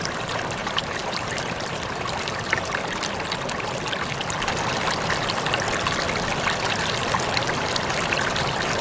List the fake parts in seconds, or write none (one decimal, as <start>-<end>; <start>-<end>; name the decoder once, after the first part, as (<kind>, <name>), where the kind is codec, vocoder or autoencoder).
0.6-2.8 (vocoder, BigVGAN v2)